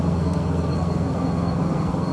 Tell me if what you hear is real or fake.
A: fake